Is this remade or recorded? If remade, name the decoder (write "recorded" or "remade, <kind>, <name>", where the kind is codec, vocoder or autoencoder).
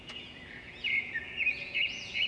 remade, vocoder, Vocos